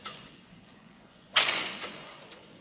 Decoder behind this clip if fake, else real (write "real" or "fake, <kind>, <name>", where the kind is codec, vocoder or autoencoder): fake, vocoder, Vocos